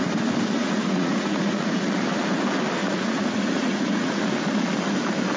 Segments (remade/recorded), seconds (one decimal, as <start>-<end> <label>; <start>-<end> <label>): 0.0-0.6 recorded; 0.6-1.9 remade; 1.9-2.8 recorded; 2.8-4.2 remade; 4.2-5.4 recorded